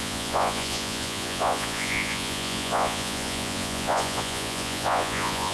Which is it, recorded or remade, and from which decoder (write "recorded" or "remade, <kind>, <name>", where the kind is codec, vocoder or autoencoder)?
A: remade, vocoder, Vocos